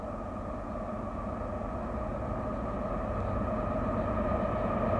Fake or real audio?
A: real